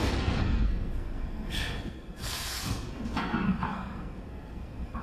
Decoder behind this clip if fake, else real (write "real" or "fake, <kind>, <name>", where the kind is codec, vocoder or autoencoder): fake, codec, SNAC